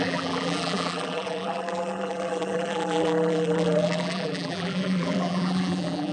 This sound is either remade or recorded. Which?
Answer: remade